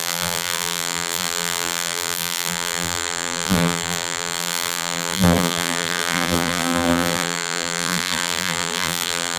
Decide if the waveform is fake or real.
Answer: fake